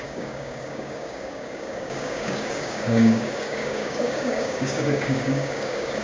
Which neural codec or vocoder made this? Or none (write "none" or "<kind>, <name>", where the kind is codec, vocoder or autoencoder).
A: codec, DAC